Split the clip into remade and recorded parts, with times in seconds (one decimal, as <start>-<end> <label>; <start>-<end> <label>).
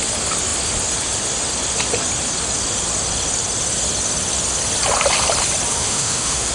0.0-5.7 recorded; 5.7-6.5 remade